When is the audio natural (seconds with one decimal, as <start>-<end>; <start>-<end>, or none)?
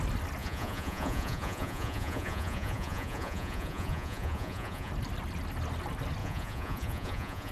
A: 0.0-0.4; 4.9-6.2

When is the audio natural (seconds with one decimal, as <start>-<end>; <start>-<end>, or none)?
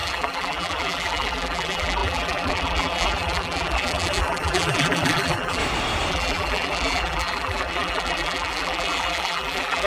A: 5.6-6.1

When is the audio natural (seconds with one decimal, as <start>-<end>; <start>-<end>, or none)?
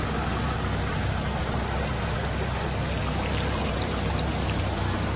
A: 0.0-0.8; 1.4-3.0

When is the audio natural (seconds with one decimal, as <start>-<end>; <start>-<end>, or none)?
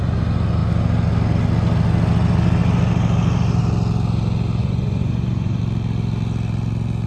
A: 0.0-4.6; 5.6-7.1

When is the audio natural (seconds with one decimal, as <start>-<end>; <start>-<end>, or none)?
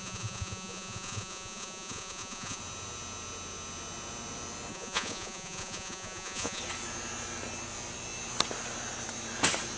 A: 2.6-4.7; 6.6-9.8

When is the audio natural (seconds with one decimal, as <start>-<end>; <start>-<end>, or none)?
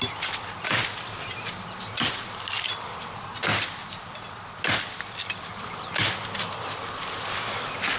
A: 0.0-8.0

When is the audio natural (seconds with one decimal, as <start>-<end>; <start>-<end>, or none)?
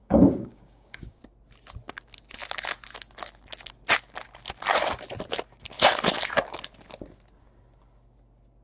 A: 1.2-8.6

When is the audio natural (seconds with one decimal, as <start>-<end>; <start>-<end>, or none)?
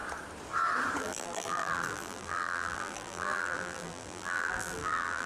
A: 0.0-1.0